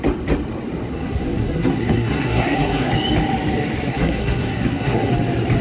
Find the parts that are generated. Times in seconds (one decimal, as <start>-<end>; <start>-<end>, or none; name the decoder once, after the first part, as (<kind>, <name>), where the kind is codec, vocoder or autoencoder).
0.9-2.9 (codec, SNAC); 3.9-5.1